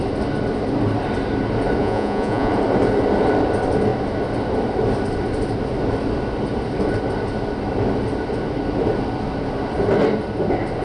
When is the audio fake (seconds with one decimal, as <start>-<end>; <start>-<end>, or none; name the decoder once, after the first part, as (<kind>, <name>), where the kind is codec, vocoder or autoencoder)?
1.8-2.5 (vocoder, Vocos)